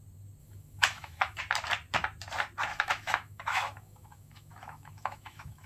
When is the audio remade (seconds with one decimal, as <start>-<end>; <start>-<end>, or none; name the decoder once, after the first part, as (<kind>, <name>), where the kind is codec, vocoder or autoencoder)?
0.4-1.4 (autoencoder, DAC-VAE); 2.7-5.7

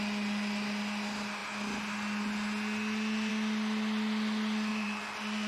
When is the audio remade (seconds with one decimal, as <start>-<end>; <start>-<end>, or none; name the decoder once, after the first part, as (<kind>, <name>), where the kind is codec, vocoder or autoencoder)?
4.7-5.5 (vocoder, BigVGAN v2)

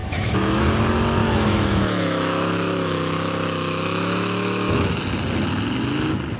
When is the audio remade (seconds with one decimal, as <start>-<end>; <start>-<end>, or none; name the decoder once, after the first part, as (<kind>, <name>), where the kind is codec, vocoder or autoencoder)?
0.0-0.6 (autoencoder, DAC-VAE); 1.2-5.0

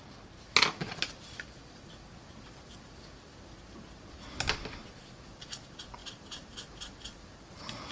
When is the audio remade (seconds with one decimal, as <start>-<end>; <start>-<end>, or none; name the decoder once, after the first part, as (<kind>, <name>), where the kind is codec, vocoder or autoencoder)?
none

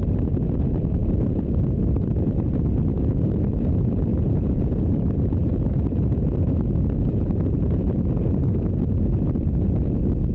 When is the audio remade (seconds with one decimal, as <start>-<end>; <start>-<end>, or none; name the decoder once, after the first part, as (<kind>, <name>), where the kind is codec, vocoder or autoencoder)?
4.1-4.9 (vocoder, Vocos)

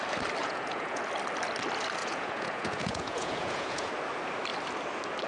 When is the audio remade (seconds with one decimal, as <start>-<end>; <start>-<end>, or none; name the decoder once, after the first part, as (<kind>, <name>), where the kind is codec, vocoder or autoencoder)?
0.4-1.0 (vocoder, Vocos); 2.0-3.9

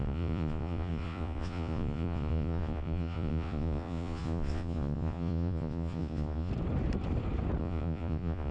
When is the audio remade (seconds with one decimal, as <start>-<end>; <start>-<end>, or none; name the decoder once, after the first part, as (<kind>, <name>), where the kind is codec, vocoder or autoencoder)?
0.0-6.5 (vocoder, Vocos); 7.6-8.5

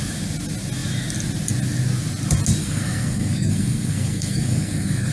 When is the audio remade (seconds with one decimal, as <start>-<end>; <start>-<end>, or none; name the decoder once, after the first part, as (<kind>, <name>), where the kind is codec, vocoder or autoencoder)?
2.6-5.1 (codec, SNAC)